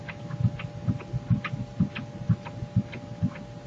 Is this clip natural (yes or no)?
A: yes